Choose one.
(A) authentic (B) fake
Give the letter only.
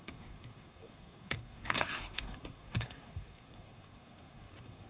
B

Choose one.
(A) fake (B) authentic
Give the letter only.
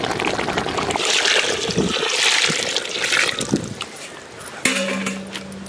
B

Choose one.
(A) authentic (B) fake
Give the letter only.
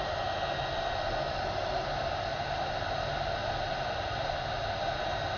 A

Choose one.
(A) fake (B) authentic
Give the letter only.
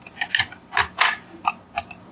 B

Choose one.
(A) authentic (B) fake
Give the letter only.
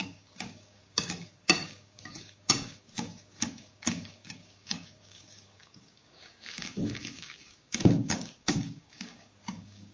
B